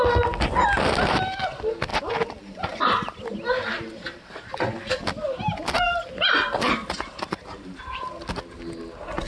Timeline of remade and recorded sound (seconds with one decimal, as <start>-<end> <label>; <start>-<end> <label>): 0.0-1.9 recorded; 1.9-4.9 remade; 4.9-6.8 recorded; 6.8-8.3 remade; 8.3-9.3 recorded